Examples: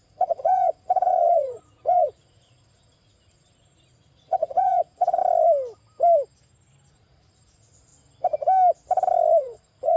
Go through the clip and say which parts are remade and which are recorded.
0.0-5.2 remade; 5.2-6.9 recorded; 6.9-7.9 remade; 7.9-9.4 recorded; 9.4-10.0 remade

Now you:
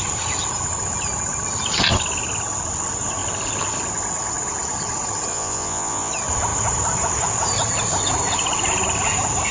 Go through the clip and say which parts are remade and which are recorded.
0.0-5.3 recorded; 5.3-6.1 remade; 6.1-9.5 recorded

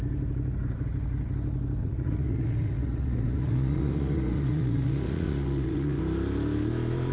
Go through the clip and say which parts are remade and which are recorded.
0.0-1.8 recorded; 1.8-6.0 remade; 6.0-7.1 recorded

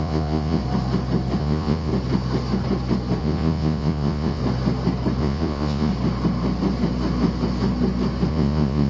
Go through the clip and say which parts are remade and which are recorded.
0.0-0.6 remade; 0.6-1.4 recorded; 1.4-1.9 remade; 1.9-3.2 recorded; 3.2-4.4 remade; 4.4-5.2 recorded; 5.2-5.9 remade; 5.9-8.3 recorded; 8.3-8.9 remade

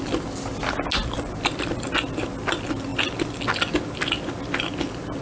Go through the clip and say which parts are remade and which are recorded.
0.0-5.2 recorded

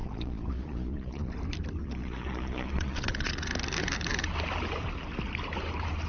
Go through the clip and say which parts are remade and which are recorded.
0.0-1.3 remade; 1.3-1.8 recorded; 1.8-3.5 remade; 3.5-6.1 recorded